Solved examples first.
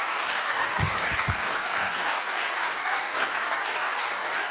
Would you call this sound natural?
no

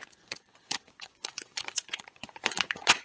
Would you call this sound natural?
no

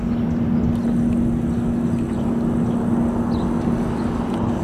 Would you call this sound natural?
yes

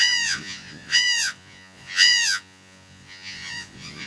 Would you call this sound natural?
no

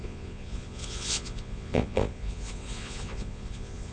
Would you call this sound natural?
no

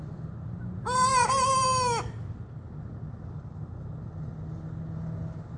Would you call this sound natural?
no